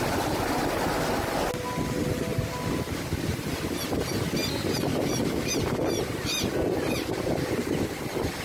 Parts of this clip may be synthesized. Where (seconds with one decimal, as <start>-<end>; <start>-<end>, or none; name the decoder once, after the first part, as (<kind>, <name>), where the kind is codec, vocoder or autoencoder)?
2.3-3.4 (vocoder, BigVGAN v2); 4.4-7.5